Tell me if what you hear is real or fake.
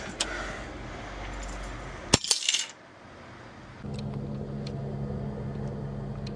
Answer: real